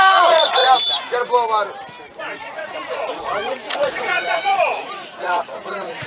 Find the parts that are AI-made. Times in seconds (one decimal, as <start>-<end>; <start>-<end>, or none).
0.0-0.6; 2.2-6.1